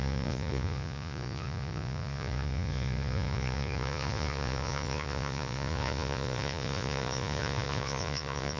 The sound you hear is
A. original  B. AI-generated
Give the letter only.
B